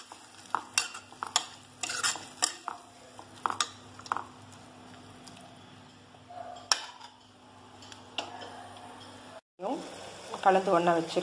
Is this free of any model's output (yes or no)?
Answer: yes